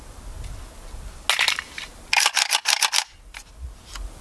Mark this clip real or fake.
real